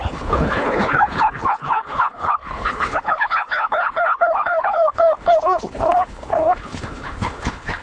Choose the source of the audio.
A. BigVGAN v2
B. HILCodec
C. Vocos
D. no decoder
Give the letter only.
B